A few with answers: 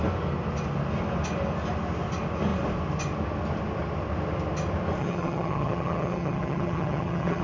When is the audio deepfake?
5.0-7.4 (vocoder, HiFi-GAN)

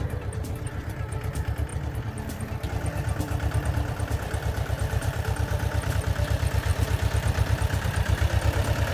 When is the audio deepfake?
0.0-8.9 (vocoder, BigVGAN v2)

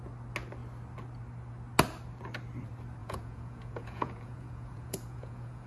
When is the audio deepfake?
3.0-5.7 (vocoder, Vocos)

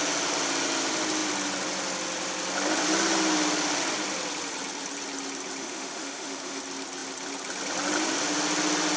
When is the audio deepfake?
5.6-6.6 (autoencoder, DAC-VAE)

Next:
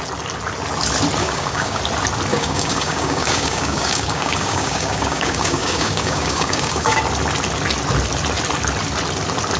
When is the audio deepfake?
1.2-1.8 (codec, DAC); 2.3-7.0